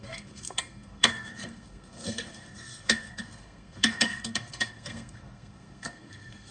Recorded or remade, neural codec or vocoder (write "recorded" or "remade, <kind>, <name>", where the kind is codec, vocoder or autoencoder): remade, codec, SNAC